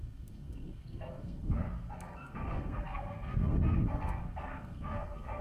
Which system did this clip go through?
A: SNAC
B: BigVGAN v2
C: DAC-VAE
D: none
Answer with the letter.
A